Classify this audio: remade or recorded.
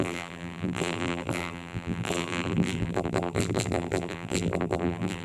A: remade